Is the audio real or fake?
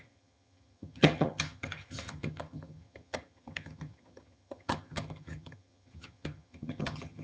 fake